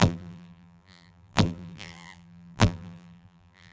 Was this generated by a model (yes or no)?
yes